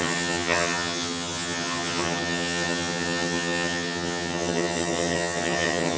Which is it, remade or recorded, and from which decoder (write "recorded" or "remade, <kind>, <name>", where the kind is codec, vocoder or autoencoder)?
remade, vocoder, HiFi-GAN